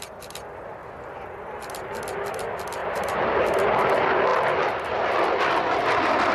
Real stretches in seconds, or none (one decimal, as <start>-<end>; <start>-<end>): 0.0-2.8; 3.4-6.3